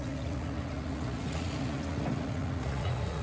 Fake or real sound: fake